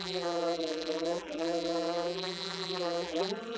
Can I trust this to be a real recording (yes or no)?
no